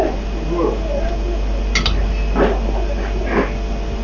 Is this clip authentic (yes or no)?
yes